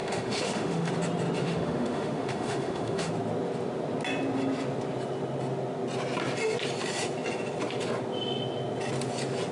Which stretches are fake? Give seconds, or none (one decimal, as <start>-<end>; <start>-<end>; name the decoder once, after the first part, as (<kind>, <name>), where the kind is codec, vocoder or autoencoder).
0.0-0.9 (autoencoder, DAC-VAE); 1.4-3.1